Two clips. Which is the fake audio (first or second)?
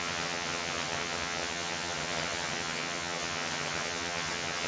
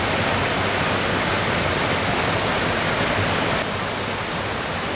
first